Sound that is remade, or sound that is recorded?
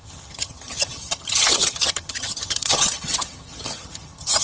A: remade